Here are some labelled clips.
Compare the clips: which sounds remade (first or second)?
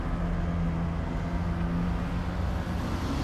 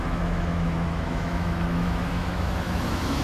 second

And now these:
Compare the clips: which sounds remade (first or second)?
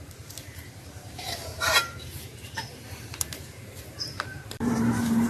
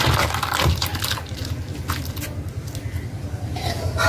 first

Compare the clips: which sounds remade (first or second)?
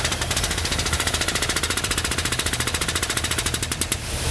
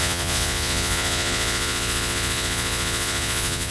second